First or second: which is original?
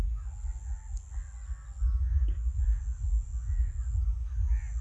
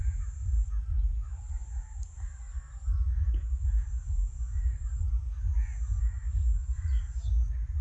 first